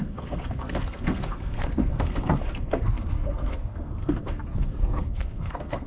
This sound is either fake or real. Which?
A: fake